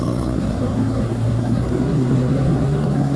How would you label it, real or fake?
fake